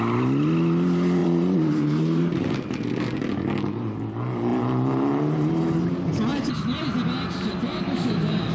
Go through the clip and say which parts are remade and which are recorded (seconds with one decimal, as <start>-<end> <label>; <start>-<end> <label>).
0.0-1.2 recorded; 1.2-2.2 remade; 2.2-8.5 recorded